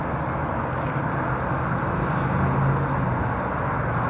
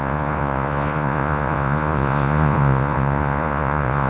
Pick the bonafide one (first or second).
first